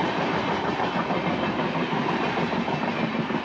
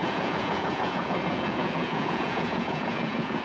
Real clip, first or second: first